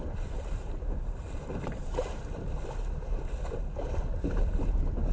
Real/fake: real